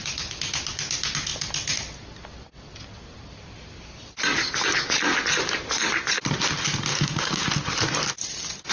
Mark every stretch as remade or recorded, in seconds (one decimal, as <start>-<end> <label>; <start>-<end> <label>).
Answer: 0.0-6.9 recorded; 6.9-7.5 remade; 7.5-8.7 recorded